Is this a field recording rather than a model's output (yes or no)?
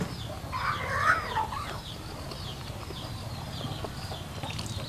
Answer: yes